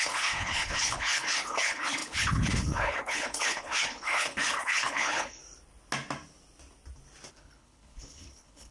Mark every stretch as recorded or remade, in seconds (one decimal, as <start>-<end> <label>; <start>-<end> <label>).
0.0-5.4 remade; 5.4-7.3 recorded; 7.3-8.7 remade